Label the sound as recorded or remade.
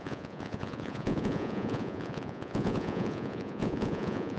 remade